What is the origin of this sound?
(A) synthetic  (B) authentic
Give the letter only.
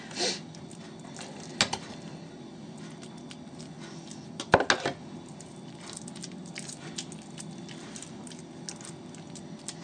B